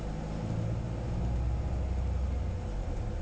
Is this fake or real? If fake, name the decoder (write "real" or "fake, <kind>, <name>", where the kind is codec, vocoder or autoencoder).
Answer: real